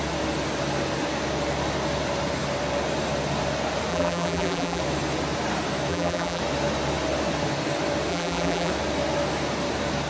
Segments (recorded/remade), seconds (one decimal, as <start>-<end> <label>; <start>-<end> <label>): 0.0-3.9 recorded; 3.9-4.8 remade; 4.8-5.9 recorded; 5.9-6.4 remade; 6.4-8.1 recorded; 8.1-8.7 remade; 8.7-10.1 recorded